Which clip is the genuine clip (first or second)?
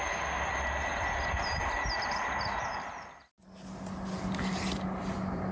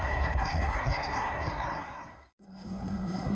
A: first